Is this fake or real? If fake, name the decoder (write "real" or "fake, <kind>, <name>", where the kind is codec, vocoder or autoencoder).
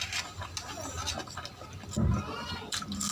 real